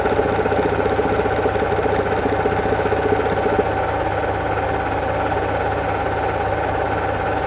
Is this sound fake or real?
real